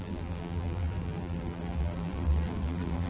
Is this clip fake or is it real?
fake